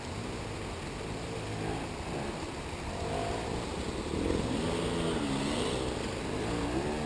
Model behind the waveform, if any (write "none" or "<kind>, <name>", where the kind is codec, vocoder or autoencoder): none